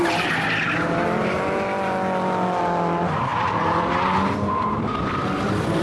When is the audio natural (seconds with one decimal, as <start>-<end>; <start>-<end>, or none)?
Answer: 0.0-3.3